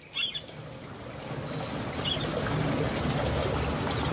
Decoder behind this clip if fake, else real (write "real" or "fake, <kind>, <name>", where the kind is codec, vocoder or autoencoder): real